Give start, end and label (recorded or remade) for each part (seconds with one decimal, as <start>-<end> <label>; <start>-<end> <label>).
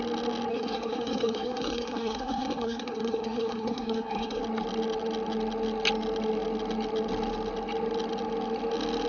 0.0-0.5 recorded; 0.5-4.4 remade; 4.4-9.1 recorded